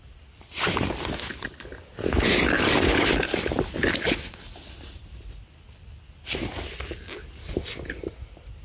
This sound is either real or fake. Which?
real